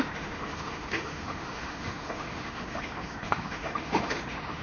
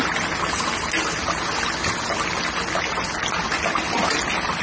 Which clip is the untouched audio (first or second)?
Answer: second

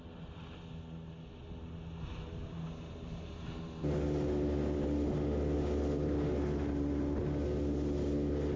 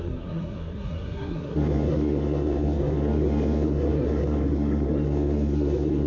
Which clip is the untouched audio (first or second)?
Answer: first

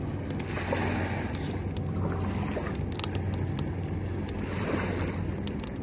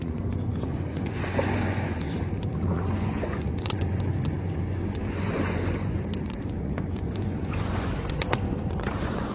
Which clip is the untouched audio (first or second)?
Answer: first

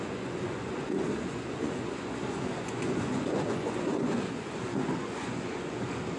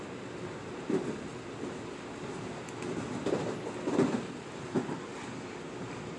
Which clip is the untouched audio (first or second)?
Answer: second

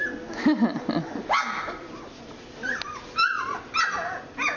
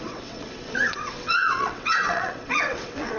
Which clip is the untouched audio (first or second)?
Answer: first